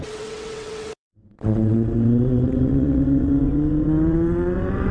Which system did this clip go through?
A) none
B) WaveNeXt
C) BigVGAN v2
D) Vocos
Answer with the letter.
B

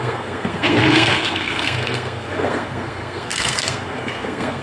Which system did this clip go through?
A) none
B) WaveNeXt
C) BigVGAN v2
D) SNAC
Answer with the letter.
D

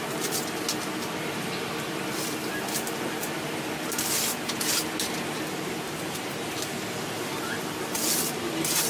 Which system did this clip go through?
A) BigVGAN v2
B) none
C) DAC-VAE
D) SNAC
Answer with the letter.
A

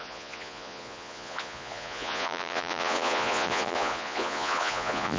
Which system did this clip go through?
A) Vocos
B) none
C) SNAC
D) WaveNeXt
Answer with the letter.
A